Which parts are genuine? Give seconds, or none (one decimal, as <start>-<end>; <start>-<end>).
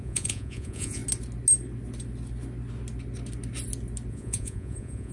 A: 1.0-4.1